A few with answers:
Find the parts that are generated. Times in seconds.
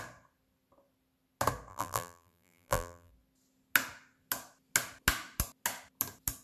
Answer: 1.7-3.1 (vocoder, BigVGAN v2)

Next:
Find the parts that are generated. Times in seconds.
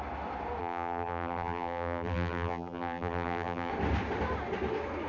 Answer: 0.6-3.7 (vocoder, BigVGAN v2)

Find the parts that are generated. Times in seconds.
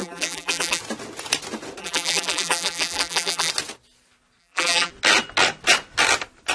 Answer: 0.0-0.8 (vocoder, BigVGAN v2); 1.8-3.5; 4.4-4.9